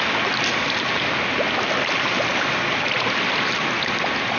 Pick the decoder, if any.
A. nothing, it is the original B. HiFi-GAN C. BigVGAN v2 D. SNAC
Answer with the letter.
A